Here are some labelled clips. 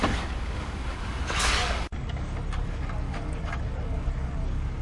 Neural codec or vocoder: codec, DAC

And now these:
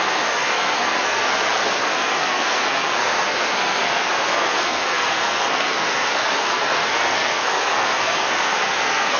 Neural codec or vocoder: codec, SNAC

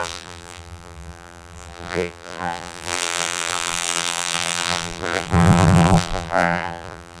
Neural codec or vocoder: vocoder, BigVGAN v2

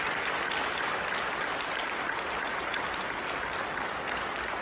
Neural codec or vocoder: vocoder, BigVGAN v2